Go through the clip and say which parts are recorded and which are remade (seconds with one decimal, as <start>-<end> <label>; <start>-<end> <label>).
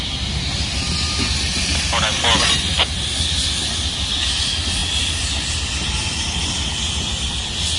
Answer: 0.0-7.8 recorded